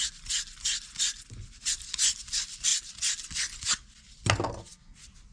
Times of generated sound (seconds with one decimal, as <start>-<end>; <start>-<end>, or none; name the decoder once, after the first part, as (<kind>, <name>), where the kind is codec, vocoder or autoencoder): none